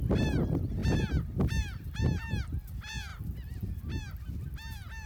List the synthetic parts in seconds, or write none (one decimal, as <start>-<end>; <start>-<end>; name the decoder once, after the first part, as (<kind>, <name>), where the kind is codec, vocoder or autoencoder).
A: 0.8-2.0 (vocoder, BigVGAN v2); 3.1-4.1